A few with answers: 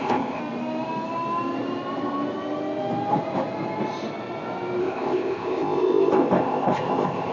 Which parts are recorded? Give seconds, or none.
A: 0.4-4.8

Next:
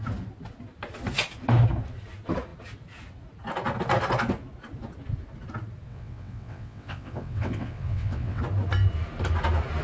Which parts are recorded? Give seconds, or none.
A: 0.0-5.9; 8.4-9.8